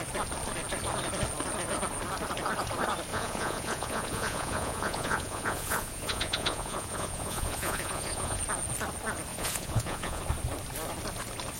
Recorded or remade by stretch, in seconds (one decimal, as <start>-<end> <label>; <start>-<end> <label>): 0.0-3.1 recorded; 3.1-8.4 remade; 8.4-9.3 recorded; 9.3-10.2 remade; 10.2-11.6 recorded